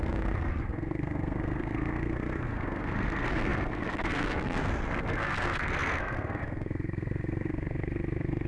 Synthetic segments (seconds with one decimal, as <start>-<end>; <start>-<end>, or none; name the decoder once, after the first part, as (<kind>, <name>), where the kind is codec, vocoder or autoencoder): 0.0-8.5 (codec, SNAC)